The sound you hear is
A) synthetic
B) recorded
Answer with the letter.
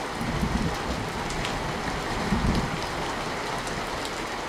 B